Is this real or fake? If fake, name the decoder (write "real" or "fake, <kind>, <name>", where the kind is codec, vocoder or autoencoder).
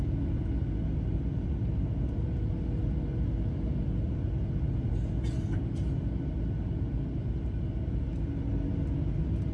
real